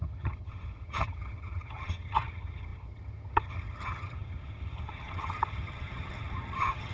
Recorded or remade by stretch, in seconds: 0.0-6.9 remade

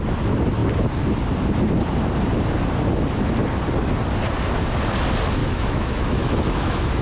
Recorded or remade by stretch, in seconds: 0.0-5.4 recorded; 5.4-7.0 remade

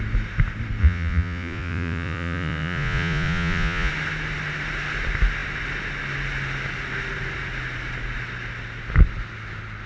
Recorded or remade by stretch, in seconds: 0.0-0.8 recorded; 0.8-3.9 remade; 3.9-9.9 recorded

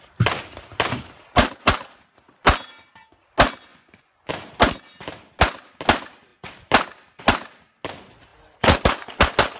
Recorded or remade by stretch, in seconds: 0.0-3.7 recorded; 3.7-4.3 remade; 4.3-9.6 recorded